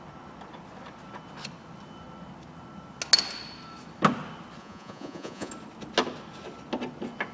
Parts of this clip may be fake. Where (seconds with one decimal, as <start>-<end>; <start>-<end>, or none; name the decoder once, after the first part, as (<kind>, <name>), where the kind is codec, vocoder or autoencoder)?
4.6-5.5 (vocoder, Vocos)